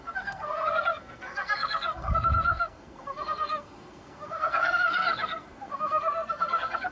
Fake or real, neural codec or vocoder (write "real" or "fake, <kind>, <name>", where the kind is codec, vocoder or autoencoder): fake, codec, SNAC